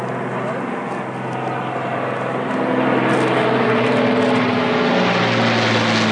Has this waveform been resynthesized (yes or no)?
no